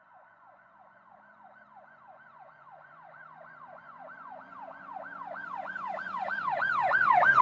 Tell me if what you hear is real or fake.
fake